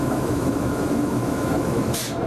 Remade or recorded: remade